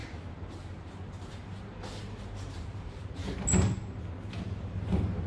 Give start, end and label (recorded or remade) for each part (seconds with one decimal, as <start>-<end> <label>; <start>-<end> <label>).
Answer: 0.0-3.2 remade; 3.2-4.4 recorded; 4.4-5.3 remade